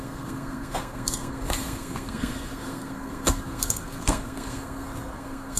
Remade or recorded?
remade